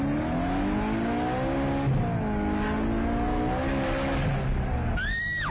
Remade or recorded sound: recorded